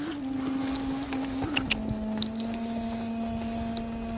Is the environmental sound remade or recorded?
recorded